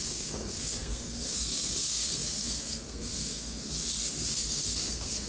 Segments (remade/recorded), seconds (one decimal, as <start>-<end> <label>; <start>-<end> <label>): 0.0-5.3 remade